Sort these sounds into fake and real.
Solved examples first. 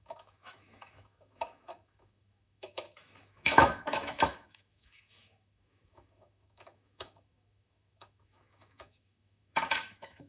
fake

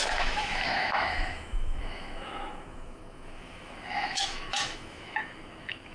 fake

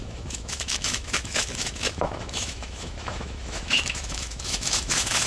fake